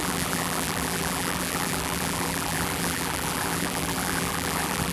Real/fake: fake